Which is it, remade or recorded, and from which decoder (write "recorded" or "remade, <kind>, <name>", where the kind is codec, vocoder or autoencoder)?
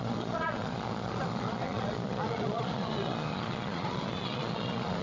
remade, vocoder, Vocos